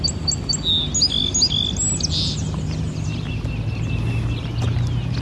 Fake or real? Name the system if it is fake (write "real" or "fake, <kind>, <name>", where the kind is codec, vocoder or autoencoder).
real